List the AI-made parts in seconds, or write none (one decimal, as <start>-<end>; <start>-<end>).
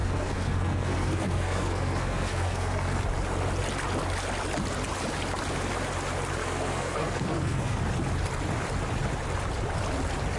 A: 0.0-3.0; 6.4-7.8